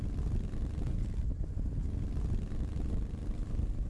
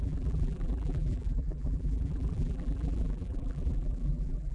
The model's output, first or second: second